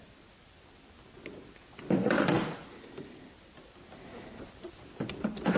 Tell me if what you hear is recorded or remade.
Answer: recorded